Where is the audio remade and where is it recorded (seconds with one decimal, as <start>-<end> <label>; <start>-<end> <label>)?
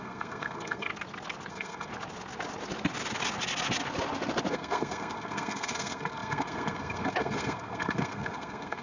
0.0-0.9 remade; 0.9-1.5 recorded; 1.5-1.9 remade; 1.9-4.5 recorded; 4.5-8.8 remade